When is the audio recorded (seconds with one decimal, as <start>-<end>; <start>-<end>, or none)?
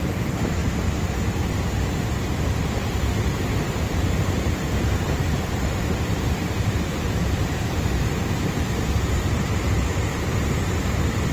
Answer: 0.6-2.3